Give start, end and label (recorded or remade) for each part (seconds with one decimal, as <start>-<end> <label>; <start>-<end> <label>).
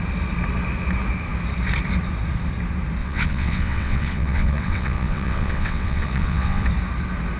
0.0-3.0 recorded; 3.0-6.7 remade; 6.7-7.4 recorded